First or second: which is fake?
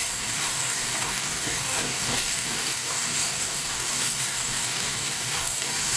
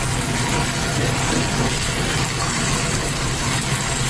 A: first